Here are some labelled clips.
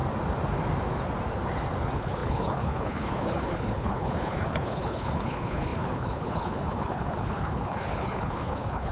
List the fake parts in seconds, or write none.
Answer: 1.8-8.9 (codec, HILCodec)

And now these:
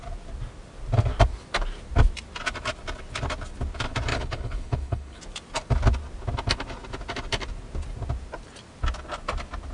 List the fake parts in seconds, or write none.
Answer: 4.1-5.2 (codec, HILCodec)

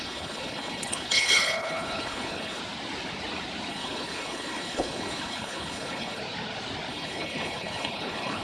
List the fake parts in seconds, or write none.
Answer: 0.0-2.6 (codec, HILCodec); 3.7-6.2; 6.9-8.4

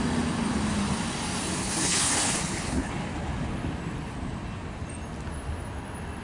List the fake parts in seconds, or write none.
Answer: 1.6-2.9 (codec, HILCodec)

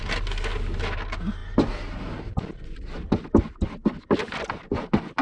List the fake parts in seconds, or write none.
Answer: none

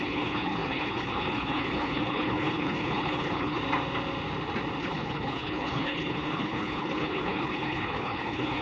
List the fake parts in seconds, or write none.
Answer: 0.0-3.6 (codec, HILCodec); 4.8-8.6